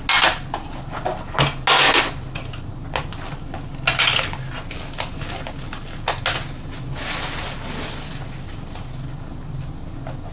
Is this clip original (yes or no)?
yes